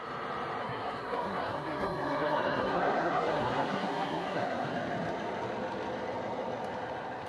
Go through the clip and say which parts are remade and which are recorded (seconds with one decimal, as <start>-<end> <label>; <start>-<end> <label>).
0.0-0.6 recorded; 0.6-4.7 remade; 4.7-7.3 recorded